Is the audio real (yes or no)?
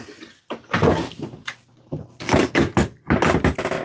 yes